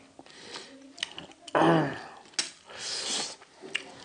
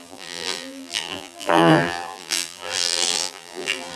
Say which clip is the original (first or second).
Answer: first